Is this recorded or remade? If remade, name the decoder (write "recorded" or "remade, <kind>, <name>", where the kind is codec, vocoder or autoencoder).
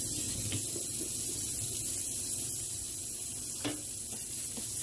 recorded